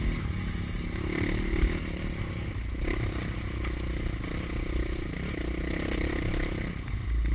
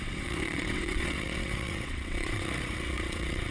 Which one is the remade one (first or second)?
second